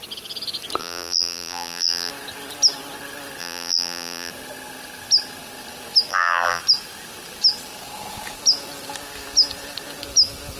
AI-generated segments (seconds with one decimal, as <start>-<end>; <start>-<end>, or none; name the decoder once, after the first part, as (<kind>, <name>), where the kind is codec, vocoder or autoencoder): 0.8-2.1 (vocoder, BigVGAN v2); 3.4-4.3; 6.1-6.6